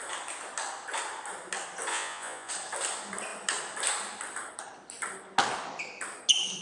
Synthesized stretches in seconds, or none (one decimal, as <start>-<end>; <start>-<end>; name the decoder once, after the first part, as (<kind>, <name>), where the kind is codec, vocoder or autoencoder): 1.9-2.5 (vocoder, Vocos)